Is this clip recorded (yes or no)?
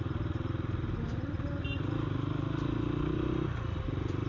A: yes